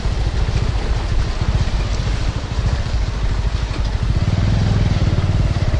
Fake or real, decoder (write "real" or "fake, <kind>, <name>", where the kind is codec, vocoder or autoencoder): real